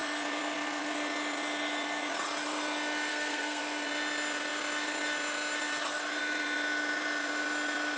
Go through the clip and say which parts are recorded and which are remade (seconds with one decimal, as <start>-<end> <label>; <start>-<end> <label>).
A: 0.0-3.1 recorded; 3.1-3.6 remade; 3.6-8.0 recorded